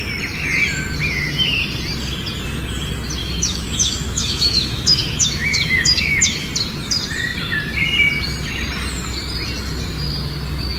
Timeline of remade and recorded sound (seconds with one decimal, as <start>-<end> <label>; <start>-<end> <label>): 0.0-3.2 recorded; 3.2-6.5 remade; 6.5-10.8 recorded